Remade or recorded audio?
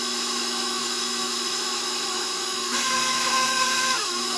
remade